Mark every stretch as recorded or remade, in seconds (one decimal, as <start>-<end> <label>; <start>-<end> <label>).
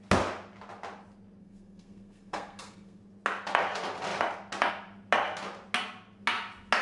0.0-1.4 recorded; 1.4-3.0 remade; 3.0-6.8 recorded